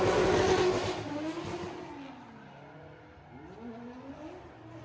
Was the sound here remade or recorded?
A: recorded